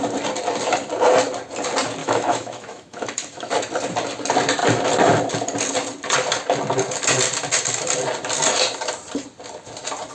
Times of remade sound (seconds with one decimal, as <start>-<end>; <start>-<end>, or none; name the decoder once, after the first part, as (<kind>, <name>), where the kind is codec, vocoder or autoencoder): 2.0-3.5 (autoencoder, DAC-VAE)